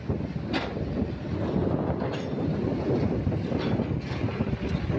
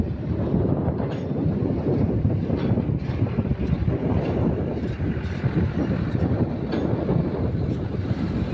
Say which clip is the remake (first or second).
second